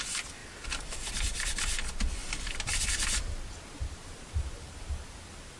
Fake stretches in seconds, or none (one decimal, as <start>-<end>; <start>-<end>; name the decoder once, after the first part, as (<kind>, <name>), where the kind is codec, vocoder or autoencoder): 0.4-1.1 (vocoder, BigVGAN v2); 2.2-2.8; 3.8-5.6